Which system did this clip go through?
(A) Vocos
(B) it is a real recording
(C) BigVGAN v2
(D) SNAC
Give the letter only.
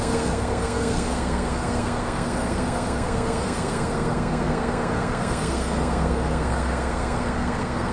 D